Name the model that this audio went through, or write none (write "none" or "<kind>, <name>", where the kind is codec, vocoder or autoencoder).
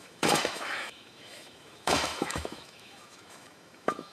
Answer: autoencoder, DAC-VAE